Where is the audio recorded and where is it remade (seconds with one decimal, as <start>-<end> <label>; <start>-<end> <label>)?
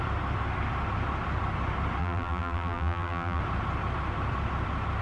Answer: 0.0-2.0 recorded; 2.0-3.4 remade; 3.4-5.0 recorded